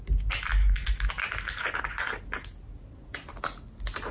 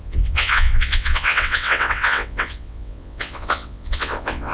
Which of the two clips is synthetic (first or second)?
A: second